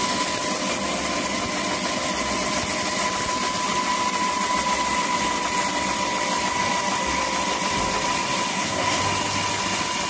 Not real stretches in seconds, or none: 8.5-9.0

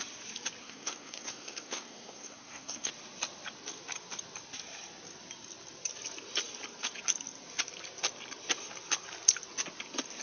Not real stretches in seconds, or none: 0.6-2.9